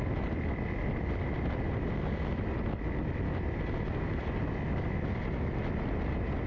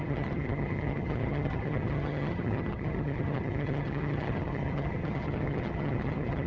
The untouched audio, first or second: first